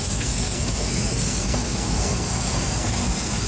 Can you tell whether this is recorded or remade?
remade